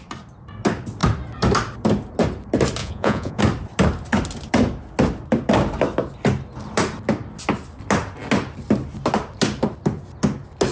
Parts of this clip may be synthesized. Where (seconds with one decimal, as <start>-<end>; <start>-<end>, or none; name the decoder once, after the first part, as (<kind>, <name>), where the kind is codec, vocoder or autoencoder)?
2.8-3.4 (vocoder, Vocos)